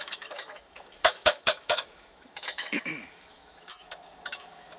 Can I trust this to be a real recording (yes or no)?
no